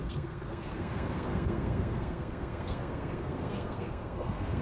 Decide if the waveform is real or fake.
fake